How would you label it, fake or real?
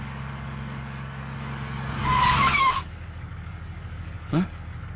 fake